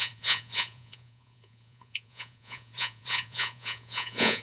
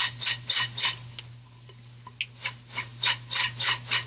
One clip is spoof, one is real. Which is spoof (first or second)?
first